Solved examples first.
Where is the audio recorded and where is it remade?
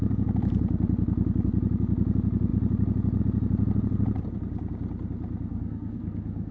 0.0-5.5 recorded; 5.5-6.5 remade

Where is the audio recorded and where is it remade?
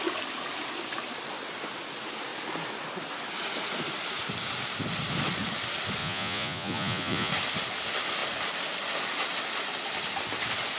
0.0-6.0 recorded; 6.0-7.3 remade; 7.3-10.8 recorded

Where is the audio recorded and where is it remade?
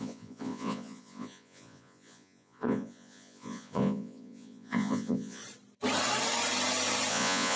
0.0-5.4 remade; 5.4-7.1 recorded; 7.1-7.6 remade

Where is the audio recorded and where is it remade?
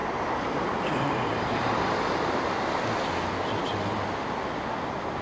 0.0-1.8 remade; 1.8-5.2 recorded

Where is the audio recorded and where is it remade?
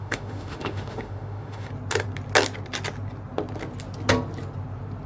0.0-1.7 remade; 1.7-5.1 recorded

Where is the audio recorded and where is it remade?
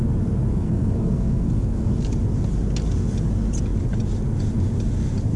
0.0-0.5 recorded; 0.5-1.9 remade; 1.9-5.4 recorded